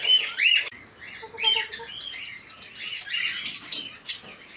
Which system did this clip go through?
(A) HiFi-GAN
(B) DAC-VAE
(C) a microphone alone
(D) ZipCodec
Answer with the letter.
C